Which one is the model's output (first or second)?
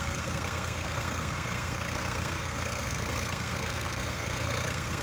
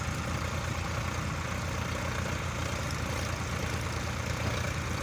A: first